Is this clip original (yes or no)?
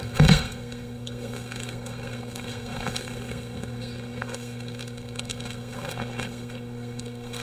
no